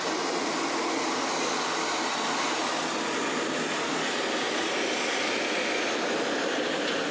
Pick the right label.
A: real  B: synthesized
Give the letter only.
A